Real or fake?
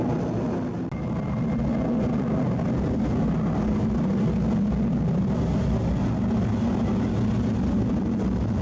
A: real